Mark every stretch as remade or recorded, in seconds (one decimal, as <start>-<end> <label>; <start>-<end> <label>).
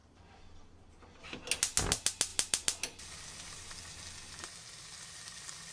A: 0.0-5.7 recorded